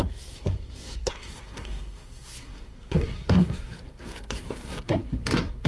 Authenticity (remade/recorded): remade